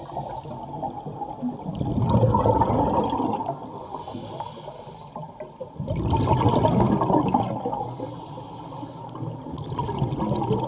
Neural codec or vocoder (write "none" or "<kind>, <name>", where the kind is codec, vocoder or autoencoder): none